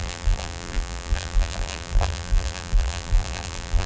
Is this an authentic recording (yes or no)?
no